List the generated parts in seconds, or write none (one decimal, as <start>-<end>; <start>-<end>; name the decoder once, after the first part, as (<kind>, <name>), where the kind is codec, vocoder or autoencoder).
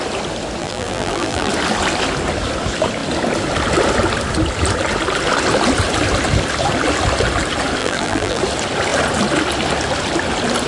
0.6-1.5 (vocoder, BigVGAN v2); 7.8-8.4